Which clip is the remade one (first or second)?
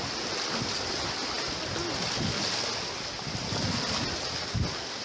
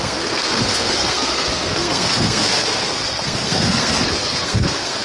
second